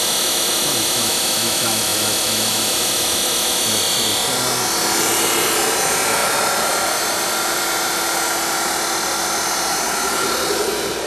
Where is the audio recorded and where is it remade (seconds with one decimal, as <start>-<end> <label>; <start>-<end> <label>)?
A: 0.0-6.2 recorded; 6.2-7.7 remade; 7.7-11.1 recorded